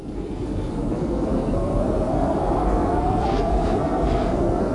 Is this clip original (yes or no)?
no